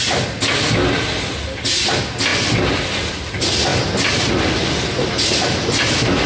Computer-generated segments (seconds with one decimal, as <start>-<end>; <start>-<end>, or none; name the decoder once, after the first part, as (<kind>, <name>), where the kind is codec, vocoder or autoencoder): none